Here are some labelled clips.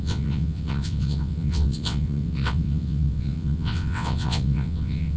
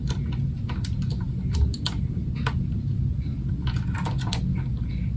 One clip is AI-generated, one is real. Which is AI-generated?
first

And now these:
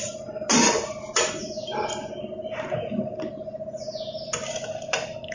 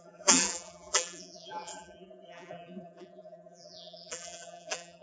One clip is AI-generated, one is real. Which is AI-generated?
second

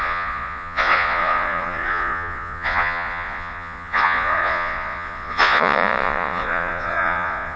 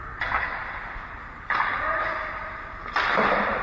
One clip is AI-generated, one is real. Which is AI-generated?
first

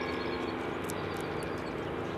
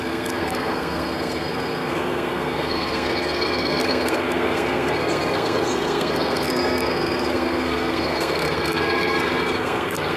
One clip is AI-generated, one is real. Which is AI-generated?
second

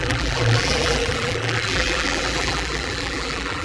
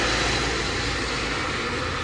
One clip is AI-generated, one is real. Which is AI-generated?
first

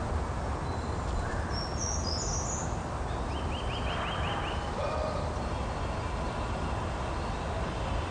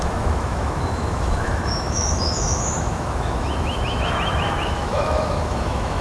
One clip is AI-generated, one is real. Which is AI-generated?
second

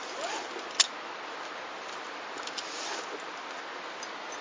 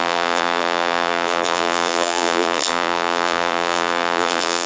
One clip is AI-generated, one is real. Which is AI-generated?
second